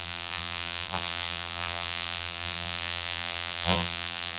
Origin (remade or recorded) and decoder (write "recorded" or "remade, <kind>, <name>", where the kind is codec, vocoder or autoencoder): remade, vocoder, BigVGAN v2